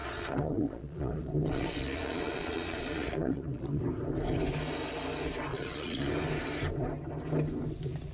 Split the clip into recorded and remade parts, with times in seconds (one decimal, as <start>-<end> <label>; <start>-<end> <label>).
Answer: 0.0-3.8 remade; 3.8-5.5 recorded; 5.5-6.1 remade; 6.1-8.1 recorded